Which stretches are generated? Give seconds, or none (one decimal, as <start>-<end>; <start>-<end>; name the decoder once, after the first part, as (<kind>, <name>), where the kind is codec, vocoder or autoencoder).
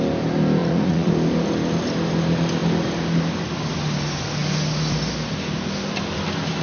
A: 0.6-1.1 (vocoder, Vocos)